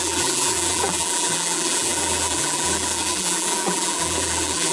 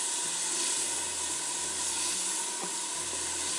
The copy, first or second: first